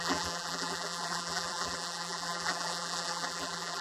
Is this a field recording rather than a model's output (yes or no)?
no